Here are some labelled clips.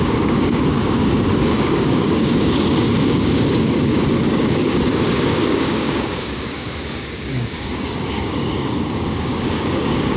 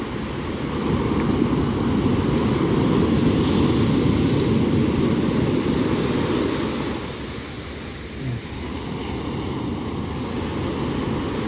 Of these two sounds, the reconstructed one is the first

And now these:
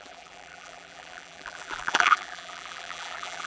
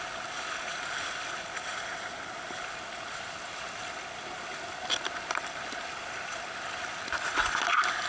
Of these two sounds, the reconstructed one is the first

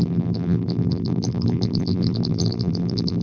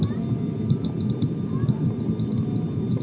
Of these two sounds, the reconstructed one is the first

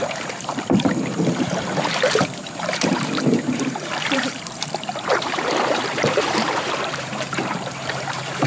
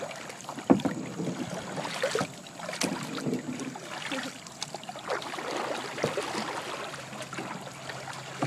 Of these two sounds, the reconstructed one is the first